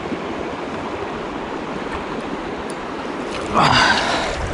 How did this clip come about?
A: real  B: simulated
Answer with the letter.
A